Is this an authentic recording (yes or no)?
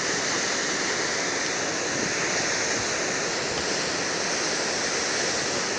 yes